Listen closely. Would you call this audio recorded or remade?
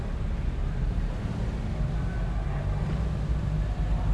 recorded